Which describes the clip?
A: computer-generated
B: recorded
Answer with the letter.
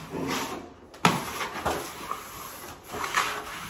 B